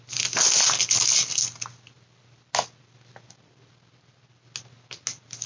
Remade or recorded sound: recorded